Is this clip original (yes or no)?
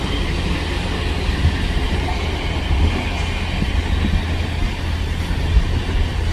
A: yes